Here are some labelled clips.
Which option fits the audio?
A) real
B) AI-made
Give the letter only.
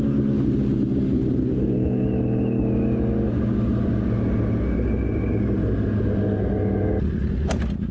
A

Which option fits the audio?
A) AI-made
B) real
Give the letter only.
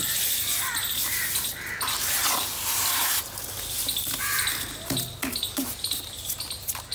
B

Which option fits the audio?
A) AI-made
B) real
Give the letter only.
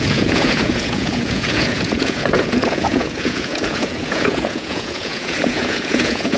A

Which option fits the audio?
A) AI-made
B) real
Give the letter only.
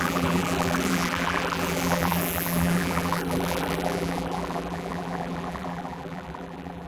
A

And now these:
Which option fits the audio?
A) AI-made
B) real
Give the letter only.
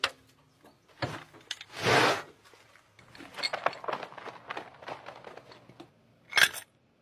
B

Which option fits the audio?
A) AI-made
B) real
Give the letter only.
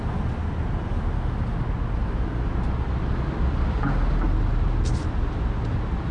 B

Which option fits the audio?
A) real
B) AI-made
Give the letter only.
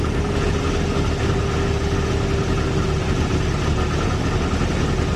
A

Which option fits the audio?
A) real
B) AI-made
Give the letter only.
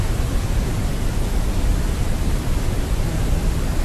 A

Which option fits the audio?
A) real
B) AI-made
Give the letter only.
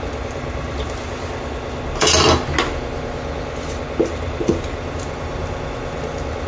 A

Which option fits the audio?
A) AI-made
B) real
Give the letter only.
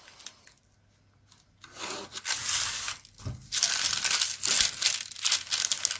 B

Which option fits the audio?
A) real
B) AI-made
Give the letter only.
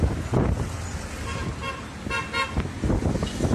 A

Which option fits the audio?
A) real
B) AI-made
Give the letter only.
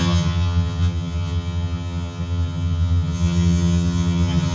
B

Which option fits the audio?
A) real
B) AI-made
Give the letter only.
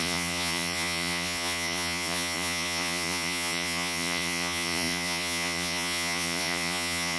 B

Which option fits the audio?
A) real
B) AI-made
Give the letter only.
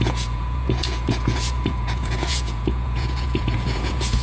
B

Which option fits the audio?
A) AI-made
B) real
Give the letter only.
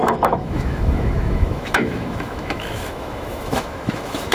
A